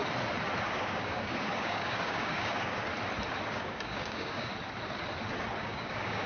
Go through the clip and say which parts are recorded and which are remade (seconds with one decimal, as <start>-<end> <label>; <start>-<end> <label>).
0.0-0.6 recorded; 0.6-2.9 remade; 2.9-3.5 recorded; 3.5-4.5 remade; 4.5-5.6 recorded; 5.6-6.3 remade